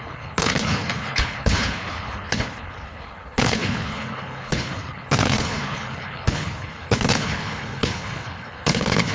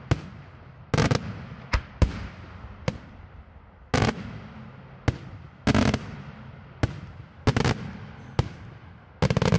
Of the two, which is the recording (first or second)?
second